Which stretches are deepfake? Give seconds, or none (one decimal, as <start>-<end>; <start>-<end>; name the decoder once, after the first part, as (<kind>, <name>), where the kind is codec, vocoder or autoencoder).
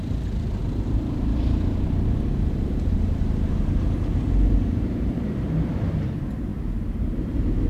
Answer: 0.6-5.2 (vocoder, BigVGAN v2); 6.5-7.7